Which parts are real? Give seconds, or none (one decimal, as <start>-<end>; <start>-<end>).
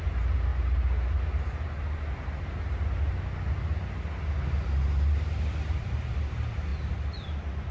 0.5-5.1